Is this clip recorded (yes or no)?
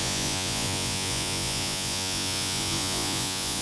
no